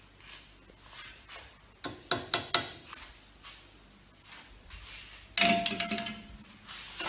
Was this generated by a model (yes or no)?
no